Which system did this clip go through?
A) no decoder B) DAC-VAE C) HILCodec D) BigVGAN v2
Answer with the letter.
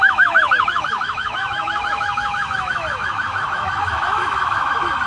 B